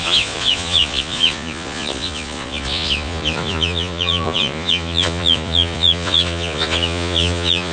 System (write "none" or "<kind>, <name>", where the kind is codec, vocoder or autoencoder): vocoder, Vocos